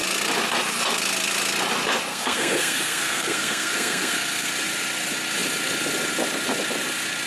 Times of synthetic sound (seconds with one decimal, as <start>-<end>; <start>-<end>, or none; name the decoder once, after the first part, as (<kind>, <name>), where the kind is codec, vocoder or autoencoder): 2.1-4.5 (codec, SNAC)